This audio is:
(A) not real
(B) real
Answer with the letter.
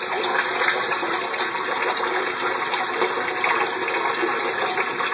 B